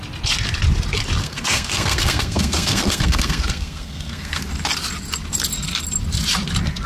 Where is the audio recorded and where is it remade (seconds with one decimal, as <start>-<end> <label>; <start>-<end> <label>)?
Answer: 0.0-1.2 recorded; 1.2-4.4 remade; 4.4-6.9 recorded